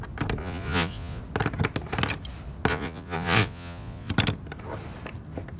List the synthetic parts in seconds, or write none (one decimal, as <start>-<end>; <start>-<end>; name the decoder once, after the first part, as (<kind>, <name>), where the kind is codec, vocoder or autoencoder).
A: 0.4-1.2 (vocoder, Vocos); 2.7-4.1